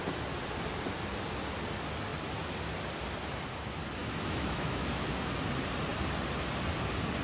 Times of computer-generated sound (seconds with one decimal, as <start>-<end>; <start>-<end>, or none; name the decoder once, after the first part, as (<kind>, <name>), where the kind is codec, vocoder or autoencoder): 4.0-5.2 (autoencoder, DAC-VAE)